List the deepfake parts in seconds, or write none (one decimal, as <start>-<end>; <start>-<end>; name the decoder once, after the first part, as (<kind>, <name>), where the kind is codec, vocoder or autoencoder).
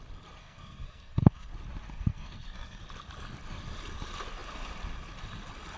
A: 0.4-1.5 (codec, SNAC); 1.9-2.8